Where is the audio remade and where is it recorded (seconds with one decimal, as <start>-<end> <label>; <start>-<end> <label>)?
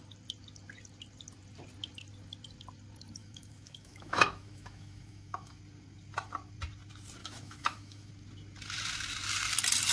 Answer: 0.0-3.2 recorded; 3.2-5.6 remade; 5.6-7.2 recorded; 7.2-8.1 remade; 8.1-9.9 recorded